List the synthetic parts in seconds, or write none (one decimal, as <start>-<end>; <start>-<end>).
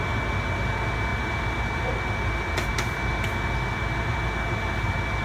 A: none